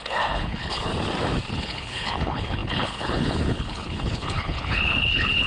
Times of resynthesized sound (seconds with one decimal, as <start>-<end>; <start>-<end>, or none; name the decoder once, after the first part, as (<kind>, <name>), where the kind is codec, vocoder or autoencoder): 0.0-0.9 (codec, HILCodec); 1.5-5.5